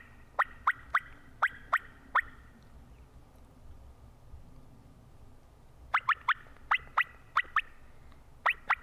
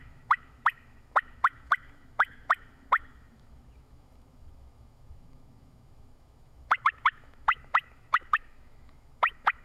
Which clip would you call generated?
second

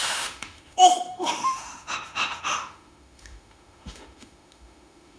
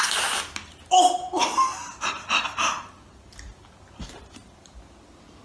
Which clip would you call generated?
first